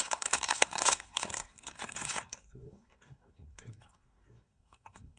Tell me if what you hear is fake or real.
fake